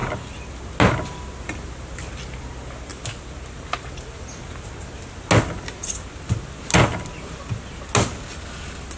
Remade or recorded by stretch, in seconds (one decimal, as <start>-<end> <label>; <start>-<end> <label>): 0.0-9.0 recorded